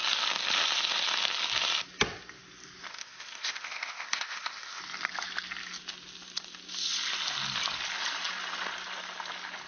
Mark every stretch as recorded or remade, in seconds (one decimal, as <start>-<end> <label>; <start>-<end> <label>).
0.0-2.9 recorded; 2.9-4.8 remade; 4.8-9.7 recorded